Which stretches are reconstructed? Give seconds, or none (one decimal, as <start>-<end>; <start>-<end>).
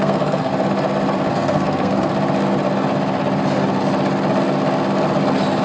0.0-0.5; 1.3-2.1